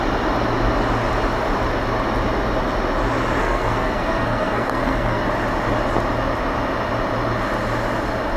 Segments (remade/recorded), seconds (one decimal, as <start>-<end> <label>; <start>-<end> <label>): 0.0-3.4 recorded; 3.4-5.2 remade; 5.2-8.4 recorded